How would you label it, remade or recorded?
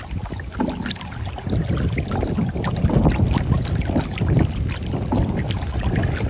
recorded